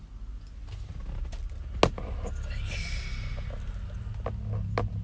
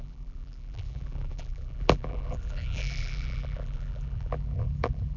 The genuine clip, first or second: first